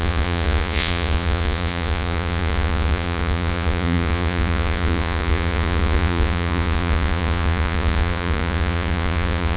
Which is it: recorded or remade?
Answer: remade